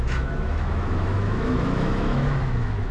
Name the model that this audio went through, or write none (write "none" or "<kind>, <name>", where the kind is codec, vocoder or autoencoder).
autoencoder, DAC-VAE